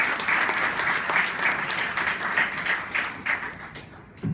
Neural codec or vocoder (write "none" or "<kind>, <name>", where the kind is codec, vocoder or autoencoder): none